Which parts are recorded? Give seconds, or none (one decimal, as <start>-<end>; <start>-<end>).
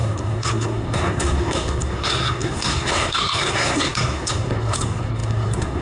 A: none